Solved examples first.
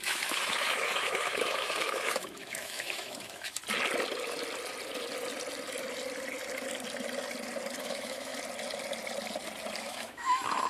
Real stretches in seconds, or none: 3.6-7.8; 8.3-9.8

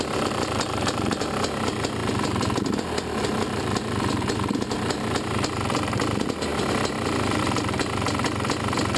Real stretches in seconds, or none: 0.0-9.0